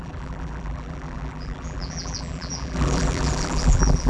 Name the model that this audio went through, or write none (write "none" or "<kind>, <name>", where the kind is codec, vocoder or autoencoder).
vocoder, BigVGAN v2